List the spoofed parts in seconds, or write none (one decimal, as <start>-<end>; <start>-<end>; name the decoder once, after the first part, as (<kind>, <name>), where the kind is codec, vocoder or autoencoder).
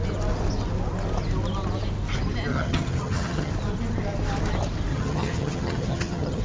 2.5-3.5 (vocoder, HiFi-GAN); 4.9-6.4